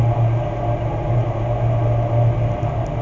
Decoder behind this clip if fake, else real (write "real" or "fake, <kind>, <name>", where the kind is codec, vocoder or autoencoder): real